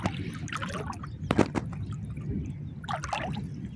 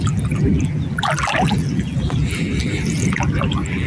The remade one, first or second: second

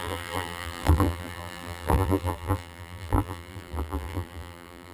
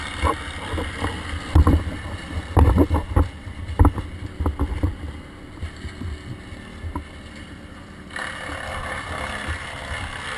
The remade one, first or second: first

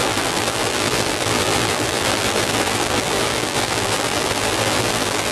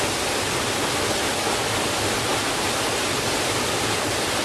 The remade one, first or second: first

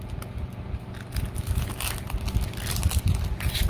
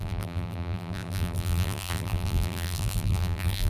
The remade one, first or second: second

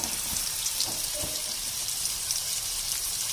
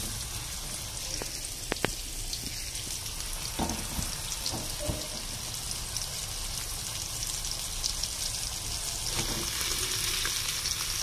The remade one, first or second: first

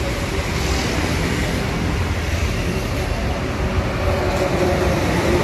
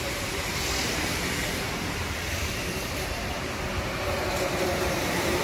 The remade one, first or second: second